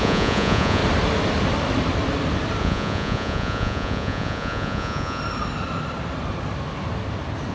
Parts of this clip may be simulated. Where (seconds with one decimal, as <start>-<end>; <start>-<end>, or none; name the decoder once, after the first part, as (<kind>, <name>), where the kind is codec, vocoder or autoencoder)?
0.0-0.8 (vocoder, Vocos); 2.6-5.2